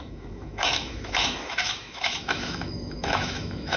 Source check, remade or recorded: remade